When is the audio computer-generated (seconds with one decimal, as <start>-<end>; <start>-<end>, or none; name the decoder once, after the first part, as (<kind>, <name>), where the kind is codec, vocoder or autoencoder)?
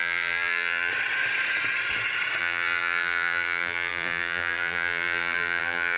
0.0-0.9 (vocoder, BigVGAN v2); 2.4-6.0